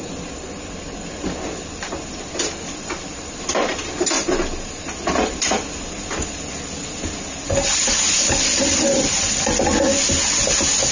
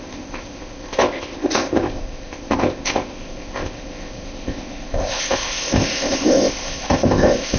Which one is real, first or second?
first